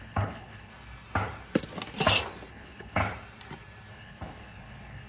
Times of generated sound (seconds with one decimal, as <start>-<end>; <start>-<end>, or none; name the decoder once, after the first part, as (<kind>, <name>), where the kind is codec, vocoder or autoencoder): 0.0-0.7 (codec, HILCodec); 2.5-3.0; 3.9-5.1